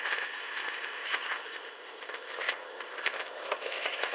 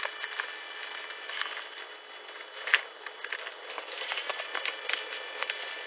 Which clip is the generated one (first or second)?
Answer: first